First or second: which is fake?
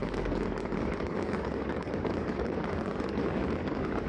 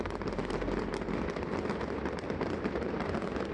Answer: first